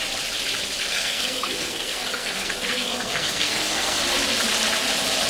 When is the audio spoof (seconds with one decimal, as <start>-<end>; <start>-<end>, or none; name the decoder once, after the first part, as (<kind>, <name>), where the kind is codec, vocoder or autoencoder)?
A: 0.8-4.0 (codec, SNAC)